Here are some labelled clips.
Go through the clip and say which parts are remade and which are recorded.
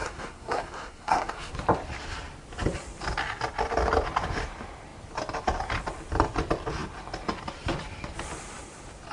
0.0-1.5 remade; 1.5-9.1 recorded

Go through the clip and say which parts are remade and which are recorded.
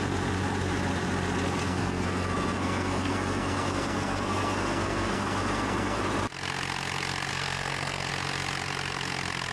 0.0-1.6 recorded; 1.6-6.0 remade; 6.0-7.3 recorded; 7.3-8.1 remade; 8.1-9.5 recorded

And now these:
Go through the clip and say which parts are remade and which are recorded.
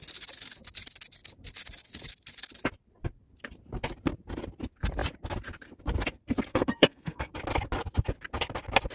0.0-6.5 recorded; 6.5-7.3 remade; 7.3-8.9 recorded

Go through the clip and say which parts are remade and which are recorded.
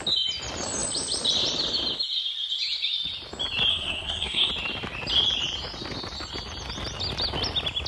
0.0-3.7 recorded; 3.7-4.5 remade; 4.5-7.9 recorded